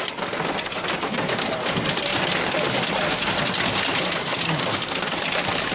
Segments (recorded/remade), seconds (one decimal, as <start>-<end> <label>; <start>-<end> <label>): 0.0-5.7 recorded